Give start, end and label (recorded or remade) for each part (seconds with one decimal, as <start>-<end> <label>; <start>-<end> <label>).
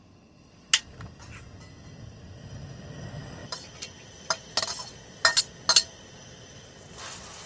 0.0-7.5 recorded